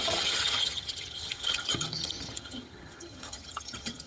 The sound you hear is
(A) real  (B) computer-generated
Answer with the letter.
B